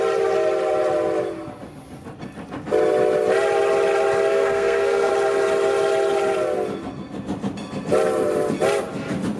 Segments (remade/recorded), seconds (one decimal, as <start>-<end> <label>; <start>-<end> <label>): 0.0-4.3 recorded; 4.3-5.1 remade; 5.1-9.4 recorded